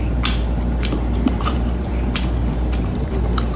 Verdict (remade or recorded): remade